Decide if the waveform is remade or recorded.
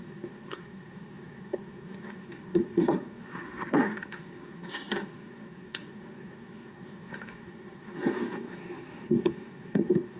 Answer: remade